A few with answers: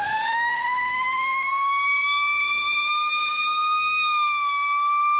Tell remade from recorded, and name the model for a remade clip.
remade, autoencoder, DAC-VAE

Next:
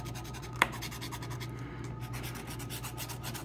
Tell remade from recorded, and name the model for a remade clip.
recorded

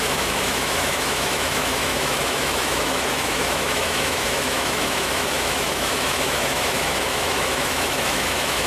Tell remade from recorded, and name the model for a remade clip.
remade, autoencoder, DAC-VAE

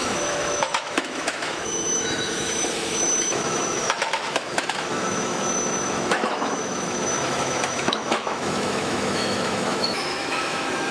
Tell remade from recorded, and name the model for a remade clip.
remade, autoencoder, DAC-VAE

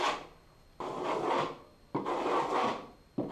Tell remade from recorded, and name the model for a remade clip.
recorded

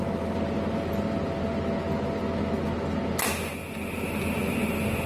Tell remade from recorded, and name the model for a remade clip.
recorded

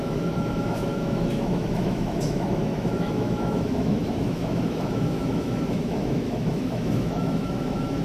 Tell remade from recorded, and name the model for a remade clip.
remade, autoencoder, DAC-VAE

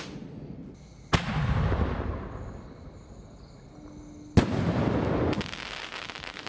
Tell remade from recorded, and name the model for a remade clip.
recorded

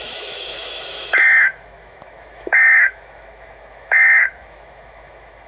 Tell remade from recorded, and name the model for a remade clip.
remade, autoencoder, DAC-VAE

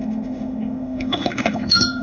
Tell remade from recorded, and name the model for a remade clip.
remade, autoencoder, DAC-VAE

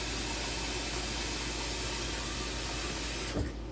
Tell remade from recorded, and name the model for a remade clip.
recorded